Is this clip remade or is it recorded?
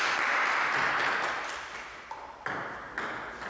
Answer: recorded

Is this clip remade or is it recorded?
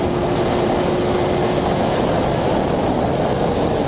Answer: recorded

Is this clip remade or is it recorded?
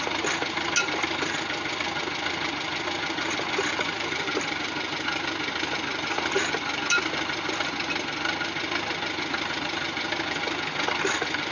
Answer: recorded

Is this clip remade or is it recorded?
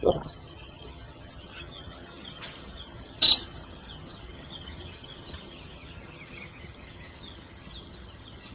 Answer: remade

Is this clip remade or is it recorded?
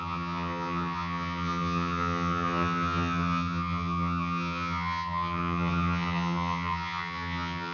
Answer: remade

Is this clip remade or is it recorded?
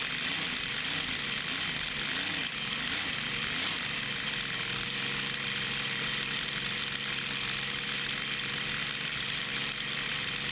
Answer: recorded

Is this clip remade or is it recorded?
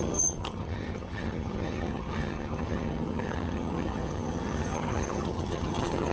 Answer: remade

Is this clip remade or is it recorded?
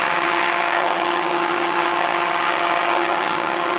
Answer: remade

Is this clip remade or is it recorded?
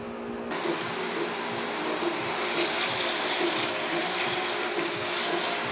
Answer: recorded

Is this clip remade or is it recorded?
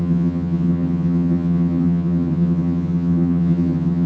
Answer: remade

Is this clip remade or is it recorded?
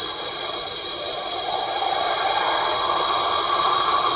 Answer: recorded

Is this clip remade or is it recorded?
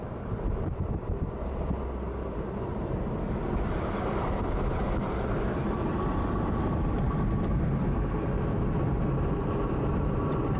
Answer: recorded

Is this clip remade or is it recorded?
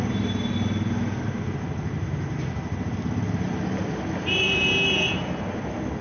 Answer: recorded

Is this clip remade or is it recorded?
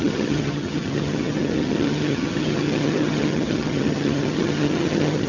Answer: remade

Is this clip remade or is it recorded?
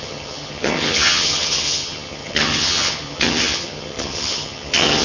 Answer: remade